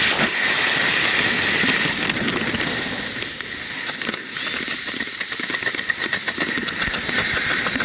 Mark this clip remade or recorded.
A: recorded